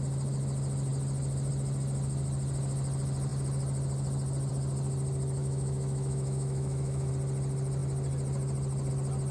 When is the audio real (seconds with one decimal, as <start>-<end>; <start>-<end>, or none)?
0.0-5.4; 7.1-9.3

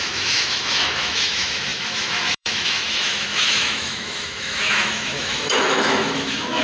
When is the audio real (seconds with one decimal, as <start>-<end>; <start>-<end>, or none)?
none